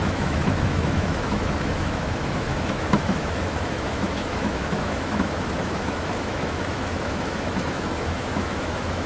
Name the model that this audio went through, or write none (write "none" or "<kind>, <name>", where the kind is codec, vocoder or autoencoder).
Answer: autoencoder, DAC-VAE